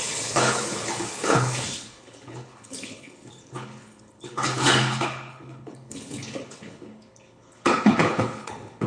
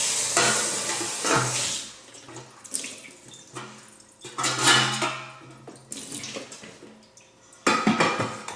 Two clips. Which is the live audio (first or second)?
second